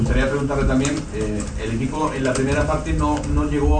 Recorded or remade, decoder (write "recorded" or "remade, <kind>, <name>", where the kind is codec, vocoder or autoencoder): recorded